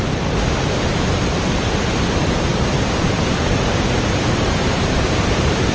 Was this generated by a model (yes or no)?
yes